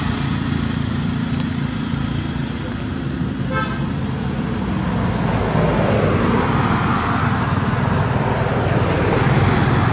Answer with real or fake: real